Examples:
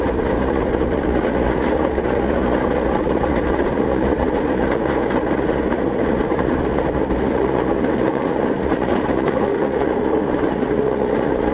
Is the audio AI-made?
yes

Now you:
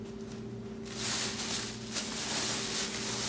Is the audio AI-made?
no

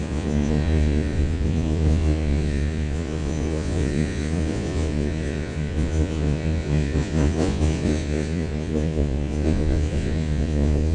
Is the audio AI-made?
yes